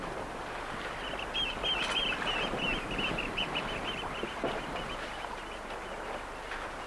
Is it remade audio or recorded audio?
recorded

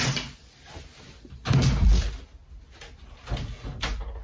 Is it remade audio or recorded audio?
recorded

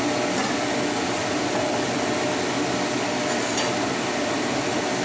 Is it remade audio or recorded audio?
recorded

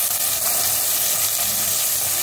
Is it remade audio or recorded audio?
recorded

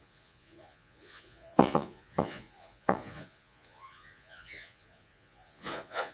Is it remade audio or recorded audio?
remade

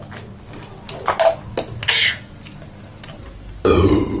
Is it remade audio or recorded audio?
recorded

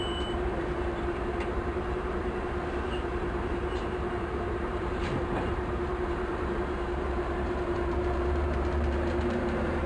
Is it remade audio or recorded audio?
remade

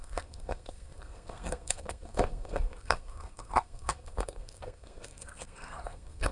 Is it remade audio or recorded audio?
remade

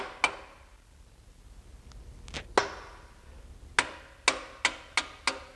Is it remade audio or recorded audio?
recorded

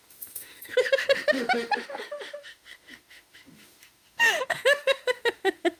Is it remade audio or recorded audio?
remade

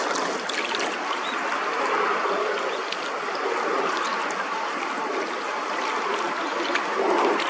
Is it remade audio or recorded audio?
recorded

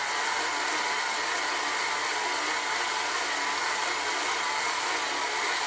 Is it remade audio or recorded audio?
recorded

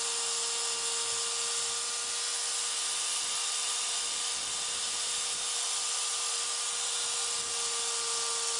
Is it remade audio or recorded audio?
recorded